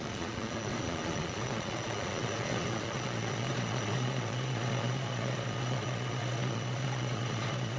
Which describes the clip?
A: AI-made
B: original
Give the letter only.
A